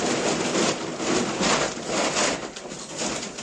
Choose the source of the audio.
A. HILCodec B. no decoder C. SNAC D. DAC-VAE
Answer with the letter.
B